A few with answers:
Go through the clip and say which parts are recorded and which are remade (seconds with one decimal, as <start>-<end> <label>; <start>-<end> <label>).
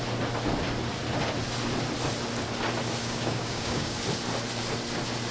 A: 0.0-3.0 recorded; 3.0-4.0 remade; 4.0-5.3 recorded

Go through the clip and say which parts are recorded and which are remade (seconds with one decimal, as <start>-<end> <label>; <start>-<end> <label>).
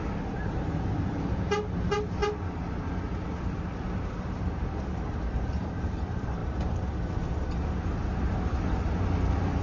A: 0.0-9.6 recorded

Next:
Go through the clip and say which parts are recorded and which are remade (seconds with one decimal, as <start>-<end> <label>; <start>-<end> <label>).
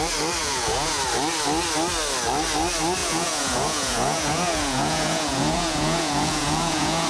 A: 0.0-0.4 recorded; 0.4-1.0 remade; 1.0-3.0 recorded; 3.0-7.1 remade